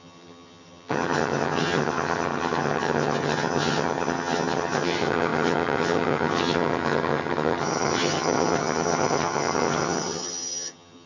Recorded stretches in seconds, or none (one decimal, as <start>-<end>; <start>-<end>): none